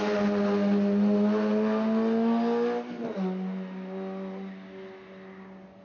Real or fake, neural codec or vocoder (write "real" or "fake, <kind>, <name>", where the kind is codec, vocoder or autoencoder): real